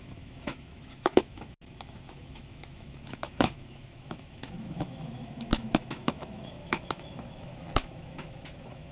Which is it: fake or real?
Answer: fake